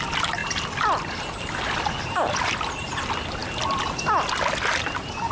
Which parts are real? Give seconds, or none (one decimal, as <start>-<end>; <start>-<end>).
0.0-5.3